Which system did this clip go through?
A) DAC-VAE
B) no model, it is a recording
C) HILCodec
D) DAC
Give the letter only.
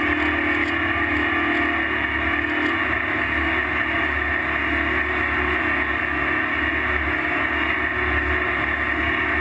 B